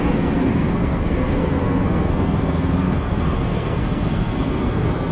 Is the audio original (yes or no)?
no